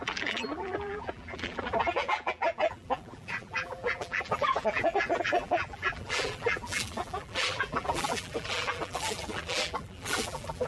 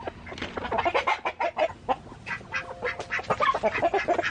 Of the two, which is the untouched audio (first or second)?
second